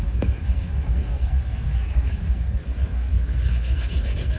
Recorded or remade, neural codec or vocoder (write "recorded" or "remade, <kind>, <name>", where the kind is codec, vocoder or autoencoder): remade, codec, SNAC